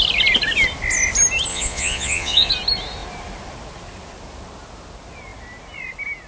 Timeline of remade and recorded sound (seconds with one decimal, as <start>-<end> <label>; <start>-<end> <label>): 0.0-1.5 recorded; 1.5-2.5 remade; 2.5-6.3 recorded